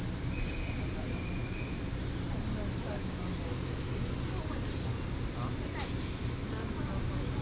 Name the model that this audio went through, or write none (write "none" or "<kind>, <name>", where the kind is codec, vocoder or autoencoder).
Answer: none